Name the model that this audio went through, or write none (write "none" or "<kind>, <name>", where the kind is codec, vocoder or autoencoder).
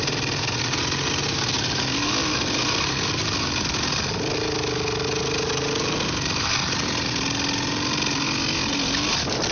none